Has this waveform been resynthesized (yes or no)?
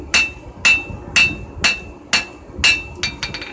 no